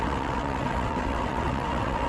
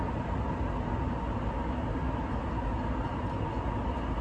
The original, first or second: second